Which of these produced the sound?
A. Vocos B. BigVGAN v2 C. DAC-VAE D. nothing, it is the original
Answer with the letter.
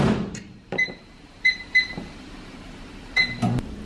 B